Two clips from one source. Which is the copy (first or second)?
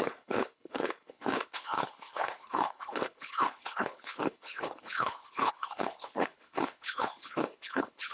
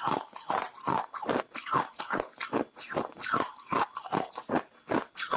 first